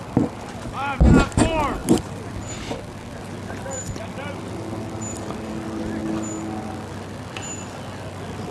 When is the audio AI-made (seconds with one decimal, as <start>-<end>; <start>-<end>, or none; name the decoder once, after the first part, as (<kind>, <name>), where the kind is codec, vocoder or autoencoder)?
none